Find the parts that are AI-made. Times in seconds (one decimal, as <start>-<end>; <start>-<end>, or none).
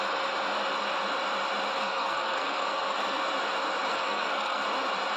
1.8-3.2; 3.9-4.6